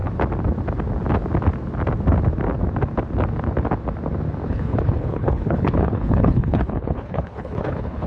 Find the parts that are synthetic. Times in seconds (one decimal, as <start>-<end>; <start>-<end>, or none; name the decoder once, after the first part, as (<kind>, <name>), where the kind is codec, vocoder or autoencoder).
4.5-8.1 (codec, HILCodec)